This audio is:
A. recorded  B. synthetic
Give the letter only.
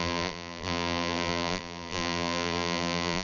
B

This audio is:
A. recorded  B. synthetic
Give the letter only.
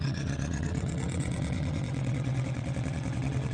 B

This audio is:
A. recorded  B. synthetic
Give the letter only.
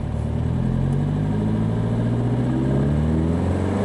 A